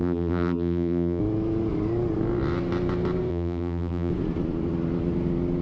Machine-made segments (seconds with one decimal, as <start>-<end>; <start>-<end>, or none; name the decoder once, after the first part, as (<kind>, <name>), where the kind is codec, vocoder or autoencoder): 0.0-1.2 (vocoder, BigVGAN v2); 3.3-4.1